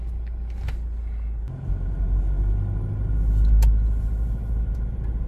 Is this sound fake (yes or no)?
no